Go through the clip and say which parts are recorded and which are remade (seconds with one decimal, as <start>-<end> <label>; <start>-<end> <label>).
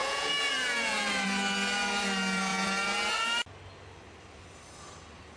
0.0-1.1 remade; 1.1-5.4 recorded